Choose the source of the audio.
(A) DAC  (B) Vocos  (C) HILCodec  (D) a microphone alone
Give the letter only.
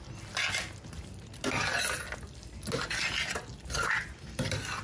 D